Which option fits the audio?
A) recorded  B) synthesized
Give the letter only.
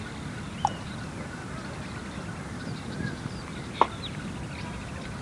B